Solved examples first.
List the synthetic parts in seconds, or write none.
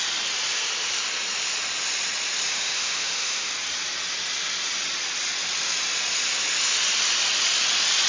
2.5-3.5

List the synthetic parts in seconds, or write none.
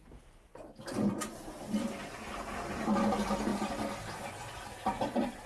none